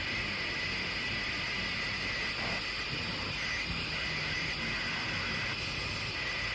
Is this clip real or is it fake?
real